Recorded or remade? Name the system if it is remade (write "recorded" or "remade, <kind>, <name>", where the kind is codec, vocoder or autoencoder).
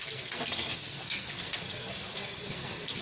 remade, codec, SNAC